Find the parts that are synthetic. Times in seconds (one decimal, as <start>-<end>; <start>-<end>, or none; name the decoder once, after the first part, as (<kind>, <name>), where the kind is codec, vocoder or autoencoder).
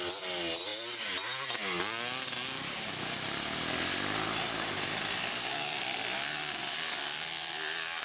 none